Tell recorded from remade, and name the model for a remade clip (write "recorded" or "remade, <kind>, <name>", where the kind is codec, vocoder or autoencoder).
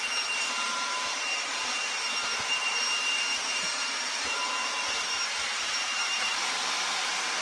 remade, vocoder, BigVGAN v2